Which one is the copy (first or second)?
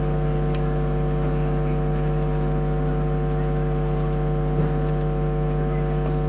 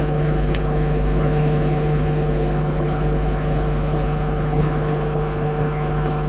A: second